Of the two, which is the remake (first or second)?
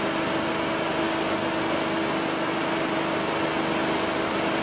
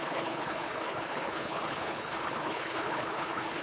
second